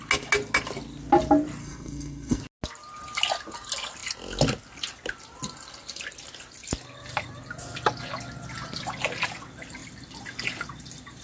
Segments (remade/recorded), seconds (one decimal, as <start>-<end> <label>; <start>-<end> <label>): 0.0-1.6 recorded; 1.6-2.4 remade; 2.4-11.2 recorded